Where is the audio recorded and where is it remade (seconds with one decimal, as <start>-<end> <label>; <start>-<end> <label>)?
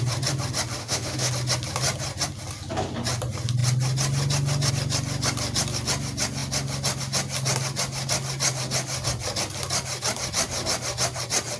0.0-0.8 recorded; 0.8-1.3 remade; 1.3-11.6 recorded